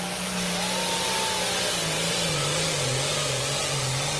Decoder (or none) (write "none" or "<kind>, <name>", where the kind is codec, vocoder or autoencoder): none